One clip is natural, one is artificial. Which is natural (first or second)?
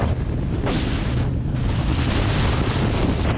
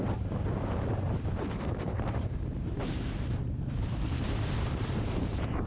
first